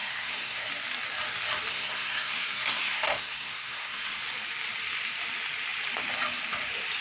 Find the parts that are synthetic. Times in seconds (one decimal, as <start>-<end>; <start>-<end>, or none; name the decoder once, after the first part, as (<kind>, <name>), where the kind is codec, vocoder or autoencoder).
0.0-0.7 (codec, SNAC); 1.7-4.2